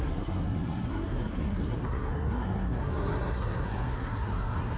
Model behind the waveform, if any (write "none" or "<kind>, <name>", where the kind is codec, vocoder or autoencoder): codec, SNAC